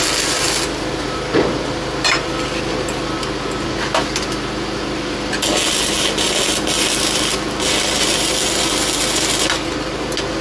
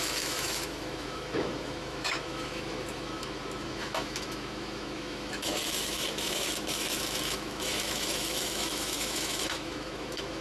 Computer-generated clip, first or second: second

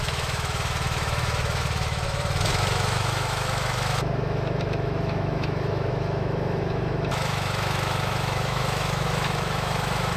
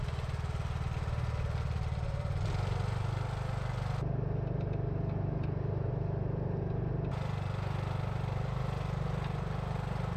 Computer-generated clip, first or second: first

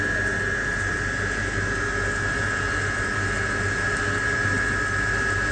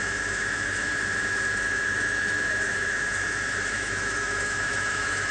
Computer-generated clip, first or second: second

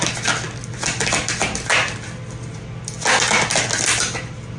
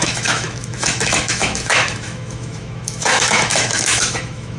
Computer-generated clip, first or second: second